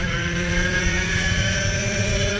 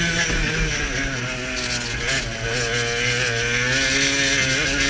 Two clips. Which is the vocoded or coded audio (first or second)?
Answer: first